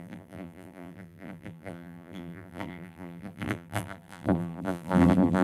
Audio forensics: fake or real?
fake